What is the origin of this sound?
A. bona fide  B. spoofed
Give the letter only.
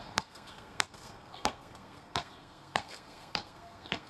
B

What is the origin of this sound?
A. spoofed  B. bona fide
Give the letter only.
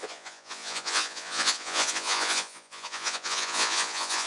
A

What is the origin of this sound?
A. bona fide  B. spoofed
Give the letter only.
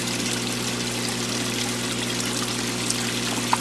A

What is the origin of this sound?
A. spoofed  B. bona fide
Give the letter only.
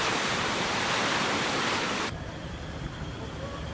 A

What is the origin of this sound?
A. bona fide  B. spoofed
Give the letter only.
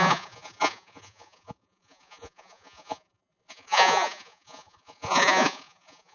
B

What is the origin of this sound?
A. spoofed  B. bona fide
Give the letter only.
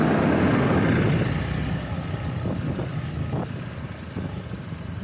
B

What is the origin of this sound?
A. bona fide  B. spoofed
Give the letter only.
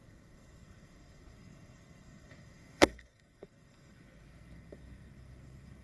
B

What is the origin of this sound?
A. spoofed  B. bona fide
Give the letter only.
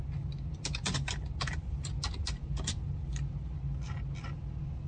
B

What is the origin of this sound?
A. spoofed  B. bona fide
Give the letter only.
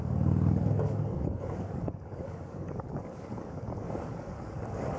A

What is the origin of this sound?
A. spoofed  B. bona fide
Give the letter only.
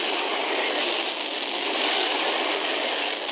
B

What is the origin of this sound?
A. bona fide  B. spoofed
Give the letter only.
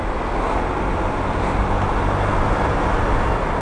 A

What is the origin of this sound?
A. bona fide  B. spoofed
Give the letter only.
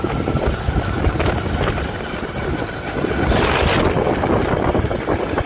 A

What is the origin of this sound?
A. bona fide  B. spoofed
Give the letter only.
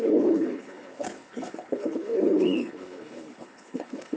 B